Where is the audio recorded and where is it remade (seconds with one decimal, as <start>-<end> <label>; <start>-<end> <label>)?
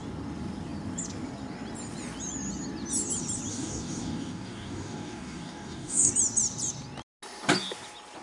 0.0-3.5 recorded; 3.5-6.1 remade; 6.1-8.2 recorded